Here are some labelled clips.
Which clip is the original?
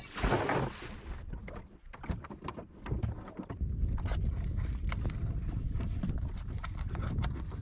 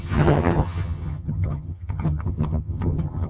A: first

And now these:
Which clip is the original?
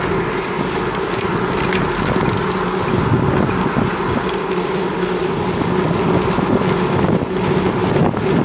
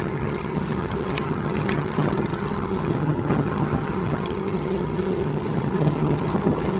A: first